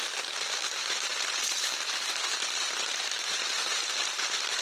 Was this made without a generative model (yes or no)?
no